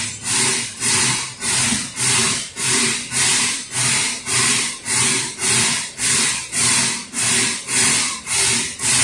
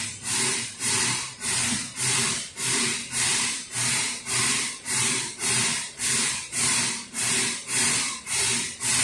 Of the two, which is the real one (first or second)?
first